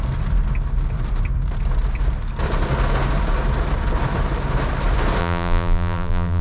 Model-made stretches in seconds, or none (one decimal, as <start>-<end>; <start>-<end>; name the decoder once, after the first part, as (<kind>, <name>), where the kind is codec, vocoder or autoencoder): 5.2-6.4 (vocoder, BigVGAN v2)